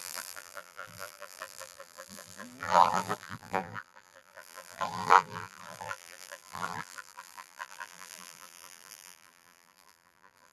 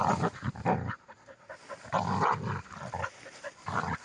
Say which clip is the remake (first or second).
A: first